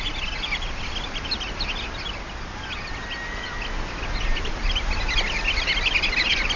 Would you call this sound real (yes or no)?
yes